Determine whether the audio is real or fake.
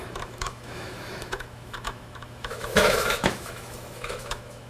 fake